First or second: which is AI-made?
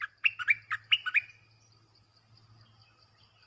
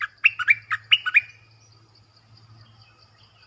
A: first